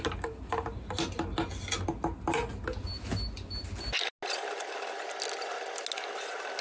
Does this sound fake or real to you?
real